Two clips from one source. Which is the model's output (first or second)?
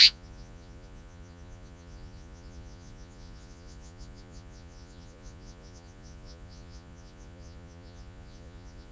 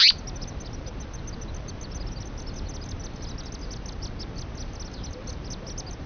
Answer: first